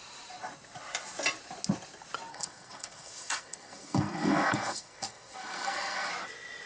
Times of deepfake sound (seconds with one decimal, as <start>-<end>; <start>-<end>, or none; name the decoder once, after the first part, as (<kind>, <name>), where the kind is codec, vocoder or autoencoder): 2.3-6.1 (codec, SNAC)